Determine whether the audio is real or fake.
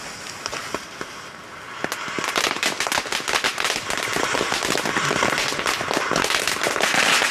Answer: real